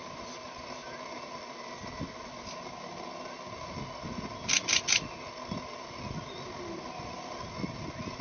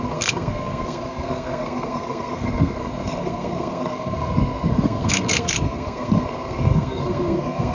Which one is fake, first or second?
second